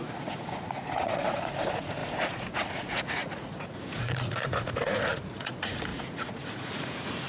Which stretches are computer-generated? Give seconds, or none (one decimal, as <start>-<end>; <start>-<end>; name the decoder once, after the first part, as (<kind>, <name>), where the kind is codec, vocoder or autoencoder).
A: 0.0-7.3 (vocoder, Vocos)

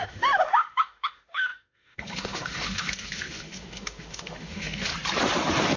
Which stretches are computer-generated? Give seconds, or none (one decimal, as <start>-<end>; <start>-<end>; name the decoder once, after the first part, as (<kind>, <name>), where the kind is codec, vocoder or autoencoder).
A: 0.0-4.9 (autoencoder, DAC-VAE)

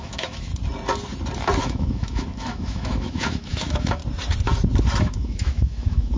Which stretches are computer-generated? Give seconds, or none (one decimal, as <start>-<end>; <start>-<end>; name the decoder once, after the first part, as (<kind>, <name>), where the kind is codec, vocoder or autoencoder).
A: 0.0-0.5 (autoencoder, DAC-VAE); 1.6-4.0; 5.0-6.2

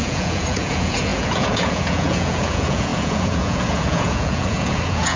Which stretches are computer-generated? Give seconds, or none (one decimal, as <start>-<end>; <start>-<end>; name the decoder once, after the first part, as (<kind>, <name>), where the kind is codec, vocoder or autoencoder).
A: 0.0-5.2 (vocoder, Vocos)

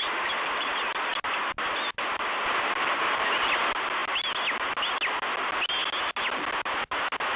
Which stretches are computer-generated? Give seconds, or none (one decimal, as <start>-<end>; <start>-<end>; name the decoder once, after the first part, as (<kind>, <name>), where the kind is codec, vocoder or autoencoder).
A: none